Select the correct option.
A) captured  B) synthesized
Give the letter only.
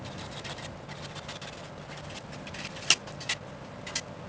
A